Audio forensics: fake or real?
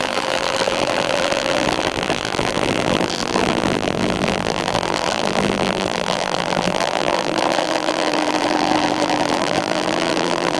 fake